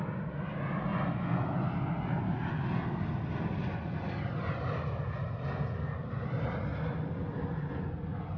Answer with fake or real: real